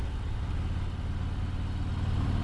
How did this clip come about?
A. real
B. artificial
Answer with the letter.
B